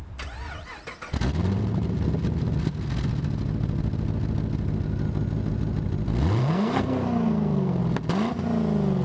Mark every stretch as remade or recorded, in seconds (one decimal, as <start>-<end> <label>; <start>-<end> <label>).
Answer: 0.0-6.4 recorded; 6.4-7.8 remade; 7.8-9.0 recorded